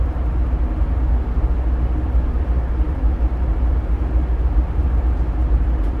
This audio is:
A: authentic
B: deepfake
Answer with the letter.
A